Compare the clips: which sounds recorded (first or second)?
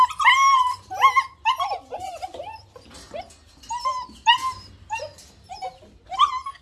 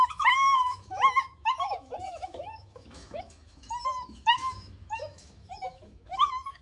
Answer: first